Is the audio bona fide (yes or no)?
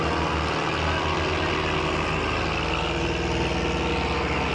yes